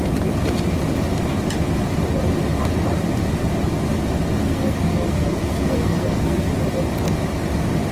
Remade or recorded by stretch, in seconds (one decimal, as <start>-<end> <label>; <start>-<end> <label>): 0.0-4.4 recorded; 4.4-6.5 remade; 6.5-7.9 recorded